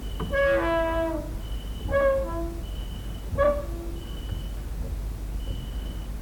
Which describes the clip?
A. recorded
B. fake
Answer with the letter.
A